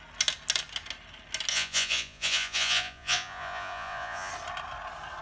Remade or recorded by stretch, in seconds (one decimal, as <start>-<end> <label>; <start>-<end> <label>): 0.0-1.5 recorded; 1.5-4.3 remade; 4.3-5.2 recorded